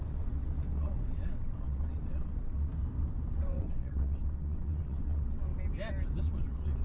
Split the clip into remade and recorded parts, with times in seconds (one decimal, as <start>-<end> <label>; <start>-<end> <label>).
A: 0.0-2.7 remade; 2.7-3.3 recorded; 3.3-5.5 remade; 5.5-6.2 recorded; 6.2-6.8 remade